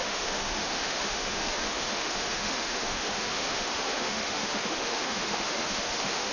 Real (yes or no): no